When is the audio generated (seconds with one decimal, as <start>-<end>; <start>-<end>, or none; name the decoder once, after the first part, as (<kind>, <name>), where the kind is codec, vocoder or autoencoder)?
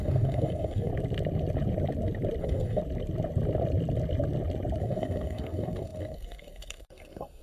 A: 0.0-0.9 (codec, SNAC); 2.4-2.8; 4.8-7.4